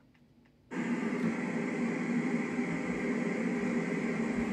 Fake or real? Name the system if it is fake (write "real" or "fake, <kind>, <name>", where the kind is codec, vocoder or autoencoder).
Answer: real